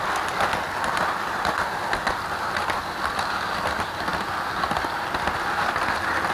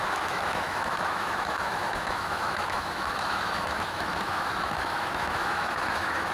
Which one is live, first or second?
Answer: first